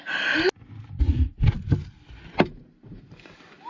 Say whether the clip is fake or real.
real